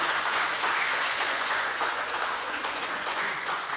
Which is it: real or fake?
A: fake